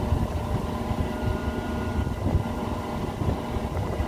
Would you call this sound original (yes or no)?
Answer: yes